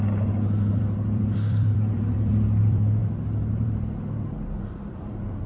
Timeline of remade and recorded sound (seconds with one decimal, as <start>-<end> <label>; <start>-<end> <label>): 0.0-5.5 remade